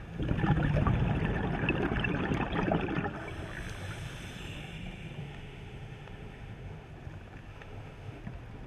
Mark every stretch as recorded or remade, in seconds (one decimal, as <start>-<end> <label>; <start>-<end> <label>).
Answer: 0.0-5.2 recorded; 5.2-6.9 remade; 6.9-7.5 recorded; 7.5-8.2 remade; 8.2-8.7 recorded